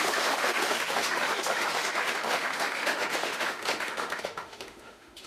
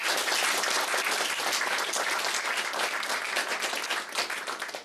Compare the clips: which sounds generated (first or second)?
first